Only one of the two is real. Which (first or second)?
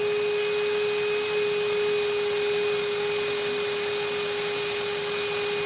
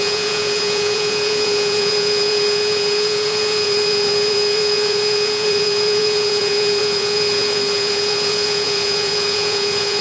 first